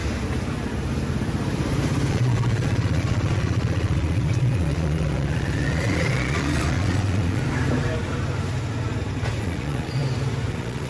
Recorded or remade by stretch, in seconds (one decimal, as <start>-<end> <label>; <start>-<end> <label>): 0.0-2.1 recorded; 2.1-7.4 remade; 7.4-9.4 recorded; 9.4-10.0 remade; 10.0-10.5 recorded; 10.5-10.9 remade